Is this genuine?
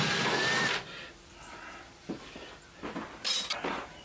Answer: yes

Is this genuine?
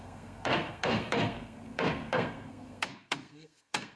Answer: no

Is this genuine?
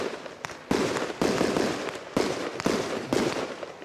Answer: yes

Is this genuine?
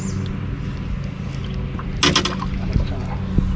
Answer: yes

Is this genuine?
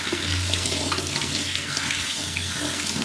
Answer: no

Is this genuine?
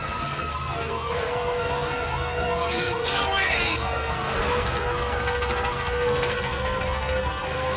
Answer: no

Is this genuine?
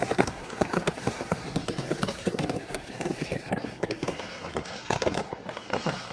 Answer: no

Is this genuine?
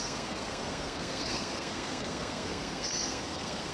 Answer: no